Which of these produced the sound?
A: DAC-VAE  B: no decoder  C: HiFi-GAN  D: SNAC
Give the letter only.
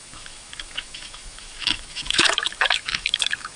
A